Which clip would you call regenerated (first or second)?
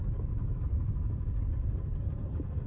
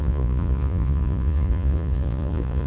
second